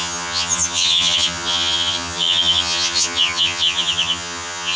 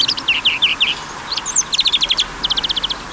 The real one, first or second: second